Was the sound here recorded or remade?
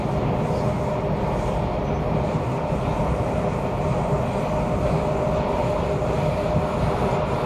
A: recorded